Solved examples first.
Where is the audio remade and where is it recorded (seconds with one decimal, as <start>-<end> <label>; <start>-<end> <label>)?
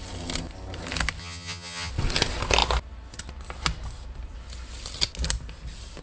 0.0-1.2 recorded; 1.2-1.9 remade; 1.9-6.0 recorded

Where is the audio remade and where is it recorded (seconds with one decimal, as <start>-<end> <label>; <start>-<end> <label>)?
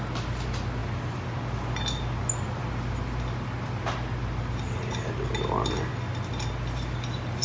0.0-7.4 recorded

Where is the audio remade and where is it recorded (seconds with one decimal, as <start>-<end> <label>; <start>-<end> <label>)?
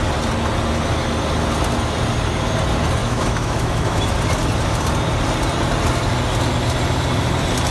0.0-3.0 recorded; 3.0-4.1 remade; 4.1-7.7 recorded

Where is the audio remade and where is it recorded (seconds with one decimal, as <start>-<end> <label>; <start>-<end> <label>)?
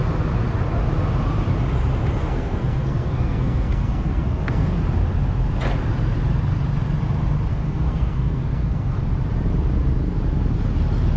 0.0-2.2 recorded; 2.2-4.7 remade; 4.7-7.5 recorded; 7.5-9.0 remade; 9.0-11.2 recorded